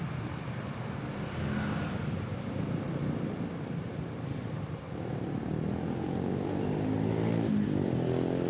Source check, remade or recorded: recorded